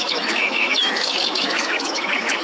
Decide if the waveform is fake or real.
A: fake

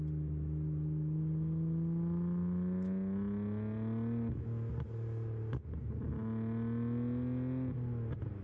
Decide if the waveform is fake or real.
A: real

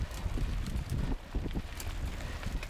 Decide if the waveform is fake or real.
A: real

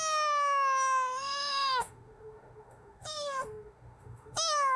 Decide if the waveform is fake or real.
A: fake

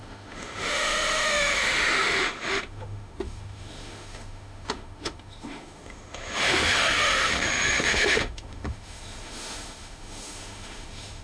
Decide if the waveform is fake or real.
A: fake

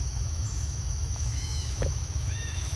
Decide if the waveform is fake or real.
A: fake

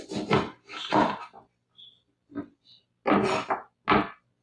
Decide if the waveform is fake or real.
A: real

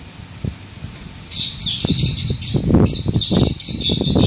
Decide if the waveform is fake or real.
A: real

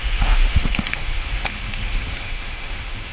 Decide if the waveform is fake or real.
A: fake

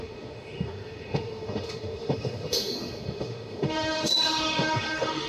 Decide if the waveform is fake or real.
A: fake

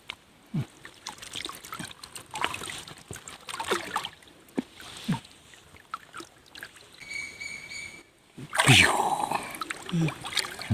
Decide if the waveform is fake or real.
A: real